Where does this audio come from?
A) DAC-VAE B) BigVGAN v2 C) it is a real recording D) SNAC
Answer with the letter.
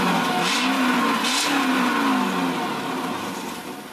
C